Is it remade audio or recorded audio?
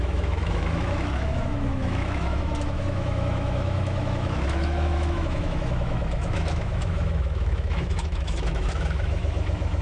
remade